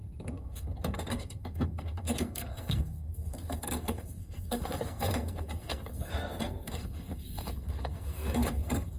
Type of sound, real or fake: fake